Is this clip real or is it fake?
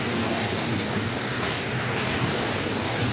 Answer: fake